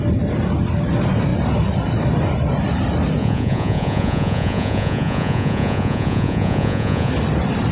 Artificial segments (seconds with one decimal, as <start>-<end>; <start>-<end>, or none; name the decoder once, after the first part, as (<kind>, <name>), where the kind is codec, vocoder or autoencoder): 3.2-7.1 (vocoder, Vocos)